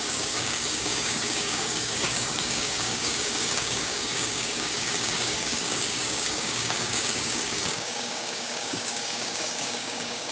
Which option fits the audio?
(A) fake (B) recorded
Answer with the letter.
A